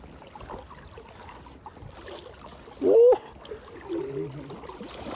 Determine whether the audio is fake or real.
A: real